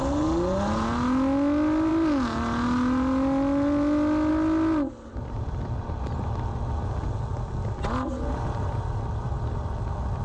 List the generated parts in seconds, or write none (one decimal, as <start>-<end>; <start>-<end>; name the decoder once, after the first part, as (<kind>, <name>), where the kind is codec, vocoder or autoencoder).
none